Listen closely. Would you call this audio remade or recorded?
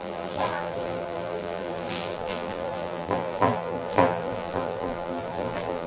remade